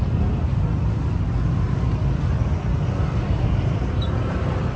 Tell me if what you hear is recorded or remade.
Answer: recorded